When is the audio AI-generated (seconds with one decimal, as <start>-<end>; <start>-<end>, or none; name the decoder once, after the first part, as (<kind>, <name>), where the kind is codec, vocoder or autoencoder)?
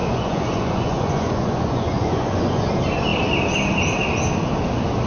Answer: 0.0-2.7 (vocoder, Vocos)